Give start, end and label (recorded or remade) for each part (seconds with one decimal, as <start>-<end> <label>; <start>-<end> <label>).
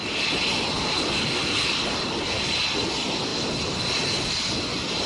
0.0-5.1 recorded